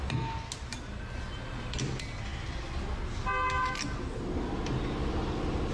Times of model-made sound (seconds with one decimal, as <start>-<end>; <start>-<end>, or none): none